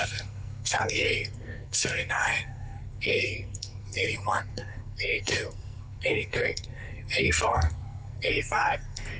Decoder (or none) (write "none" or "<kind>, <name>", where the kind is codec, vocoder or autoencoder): codec, SNAC